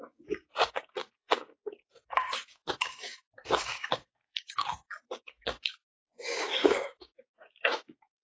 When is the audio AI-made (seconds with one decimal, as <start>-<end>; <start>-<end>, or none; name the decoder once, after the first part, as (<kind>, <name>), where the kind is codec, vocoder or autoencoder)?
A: 0.0-8.2 (codec, DAC)